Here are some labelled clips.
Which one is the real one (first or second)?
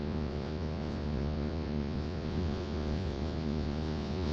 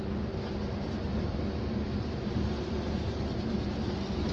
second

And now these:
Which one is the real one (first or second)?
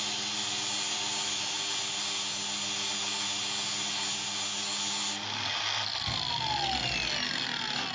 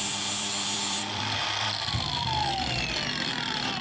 first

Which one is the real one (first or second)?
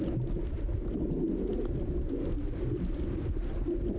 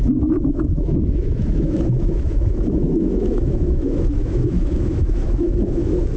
first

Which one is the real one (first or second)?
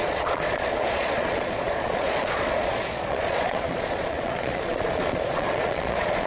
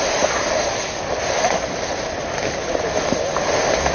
second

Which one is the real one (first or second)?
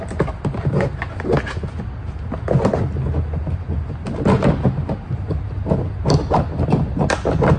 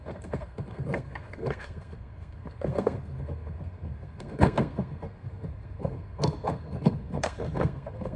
first